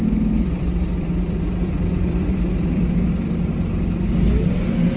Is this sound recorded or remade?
remade